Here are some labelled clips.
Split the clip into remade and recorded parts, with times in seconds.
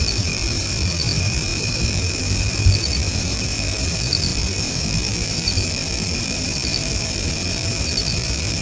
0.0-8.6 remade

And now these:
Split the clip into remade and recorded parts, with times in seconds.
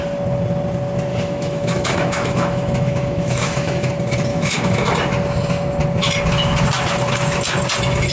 0.0-1.1 recorded; 1.1-3.9 remade; 3.9-4.3 recorded; 4.3-4.9 remade; 4.9-8.1 recorded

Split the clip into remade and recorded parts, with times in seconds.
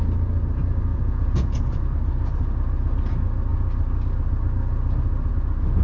0.0-0.9 recorded; 0.9-1.8 remade; 1.8-5.8 recorded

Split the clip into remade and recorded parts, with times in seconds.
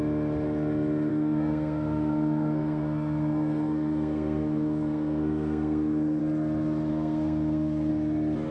0.0-1.1 recorded; 1.1-6.2 remade; 6.2-6.9 recorded; 6.9-7.9 remade; 7.9-8.5 recorded